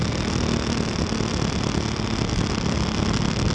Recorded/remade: recorded